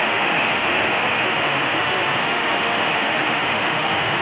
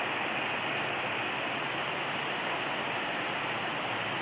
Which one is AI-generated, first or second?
first